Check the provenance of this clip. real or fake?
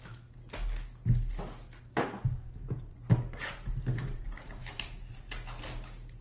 real